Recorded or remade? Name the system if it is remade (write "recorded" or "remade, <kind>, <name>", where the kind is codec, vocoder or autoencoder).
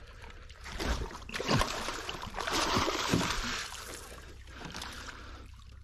remade, vocoder, BigVGAN v2